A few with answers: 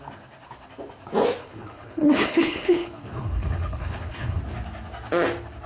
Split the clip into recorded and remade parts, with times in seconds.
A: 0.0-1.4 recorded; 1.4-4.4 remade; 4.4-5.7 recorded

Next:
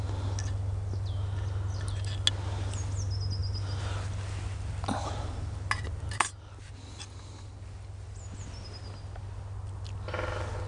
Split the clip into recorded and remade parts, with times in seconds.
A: 0.0-10.7 recorded

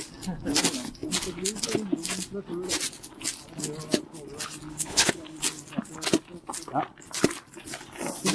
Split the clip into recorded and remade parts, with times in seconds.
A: 0.0-4.7 recorded; 4.7-5.4 remade; 5.4-8.3 recorded

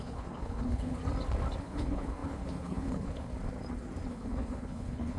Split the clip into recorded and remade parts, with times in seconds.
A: 0.0-1.0 remade; 1.0-1.6 recorded; 1.6-3.3 remade; 3.3-4.1 recorded; 4.1-5.2 remade